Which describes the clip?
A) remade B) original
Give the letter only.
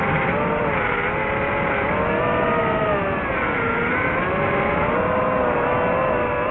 B